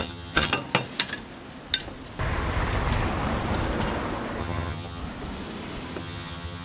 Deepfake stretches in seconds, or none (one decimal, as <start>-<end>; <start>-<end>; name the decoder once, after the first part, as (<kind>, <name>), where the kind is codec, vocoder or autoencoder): 0.0-0.5 (vocoder, HiFi-GAN); 4.4-5.0; 6.0-6.6